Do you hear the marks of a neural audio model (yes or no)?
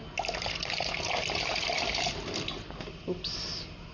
no